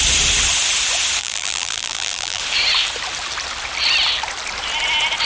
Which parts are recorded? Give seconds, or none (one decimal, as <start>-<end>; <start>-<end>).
0.0-1.2; 2.4-5.3